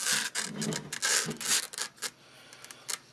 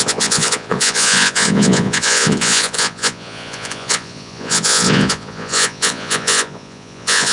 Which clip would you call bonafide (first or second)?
first